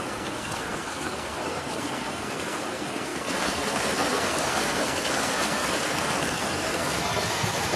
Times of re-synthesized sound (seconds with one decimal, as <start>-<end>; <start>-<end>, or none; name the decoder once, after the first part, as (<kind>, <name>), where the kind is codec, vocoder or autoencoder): 0.0-7.8 (codec, SNAC)